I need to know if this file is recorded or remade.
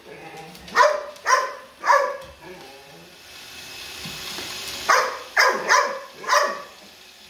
recorded